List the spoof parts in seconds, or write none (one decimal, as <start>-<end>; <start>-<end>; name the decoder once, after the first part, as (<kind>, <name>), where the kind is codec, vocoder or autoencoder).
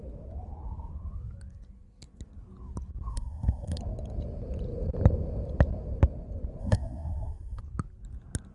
3.1-3.8 (codec, SNAC); 6.6-7.6